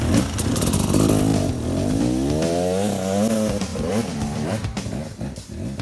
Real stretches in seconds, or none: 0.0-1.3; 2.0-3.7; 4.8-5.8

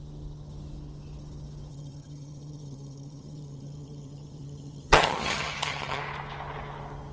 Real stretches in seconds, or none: 0.0-1.7; 6.0-7.1

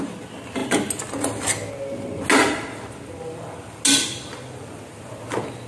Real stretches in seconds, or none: 0.0-5.7